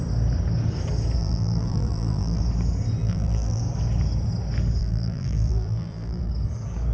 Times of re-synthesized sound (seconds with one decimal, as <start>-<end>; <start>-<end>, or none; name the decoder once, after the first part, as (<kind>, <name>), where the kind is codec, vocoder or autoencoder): 1.2-2.4 (vocoder, BigVGAN v2); 3.0-3.6; 4.8-6.3

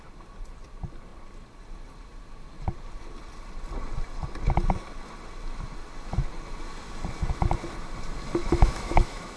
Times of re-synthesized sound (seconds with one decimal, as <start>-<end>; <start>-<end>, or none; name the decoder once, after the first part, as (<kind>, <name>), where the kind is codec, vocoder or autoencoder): 8.4-9.4 (autoencoder, DAC-VAE)

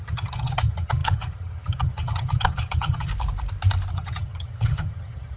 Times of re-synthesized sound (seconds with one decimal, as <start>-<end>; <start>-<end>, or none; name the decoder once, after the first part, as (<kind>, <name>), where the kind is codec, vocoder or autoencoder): 0.0-3.1 (vocoder, HiFi-GAN); 3.9-5.4

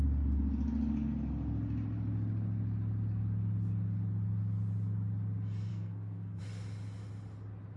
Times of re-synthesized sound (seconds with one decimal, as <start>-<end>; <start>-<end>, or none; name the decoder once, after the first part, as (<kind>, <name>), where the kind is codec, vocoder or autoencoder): 5.7-6.4 (codec, SNAC)

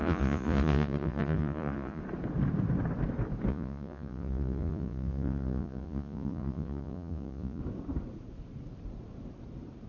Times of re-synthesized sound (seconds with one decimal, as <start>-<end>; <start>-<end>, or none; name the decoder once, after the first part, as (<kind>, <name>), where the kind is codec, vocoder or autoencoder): 0.0-2.0 (vocoder, Vocos); 3.5-7.6

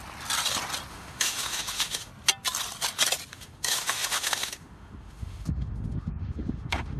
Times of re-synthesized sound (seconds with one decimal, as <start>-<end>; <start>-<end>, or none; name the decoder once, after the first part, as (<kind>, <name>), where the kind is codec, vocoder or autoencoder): 0.9-2.1 (autoencoder, DAC-VAE); 3.3-7.0